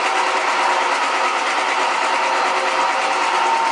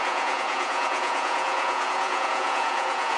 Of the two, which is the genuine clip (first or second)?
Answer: first